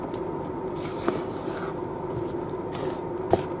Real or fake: real